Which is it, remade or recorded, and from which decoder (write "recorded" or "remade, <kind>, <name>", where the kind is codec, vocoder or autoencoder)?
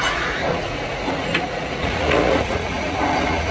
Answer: remade, vocoder, Vocos